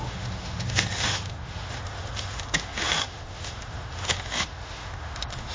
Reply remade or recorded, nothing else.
remade